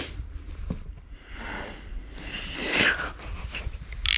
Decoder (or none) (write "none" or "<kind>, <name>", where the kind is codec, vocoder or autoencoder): none